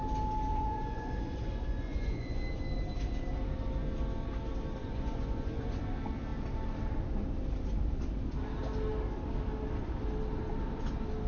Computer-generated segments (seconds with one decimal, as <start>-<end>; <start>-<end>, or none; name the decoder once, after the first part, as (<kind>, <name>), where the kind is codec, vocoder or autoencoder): 0.5-2.5 (vocoder, Vocos); 4.8-5.8

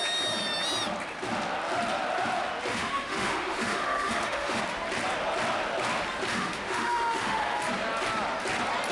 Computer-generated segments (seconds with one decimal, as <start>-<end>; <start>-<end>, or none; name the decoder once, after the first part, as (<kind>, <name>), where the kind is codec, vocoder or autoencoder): 2.7-4.6 (autoencoder, DAC-VAE); 6.3-7.6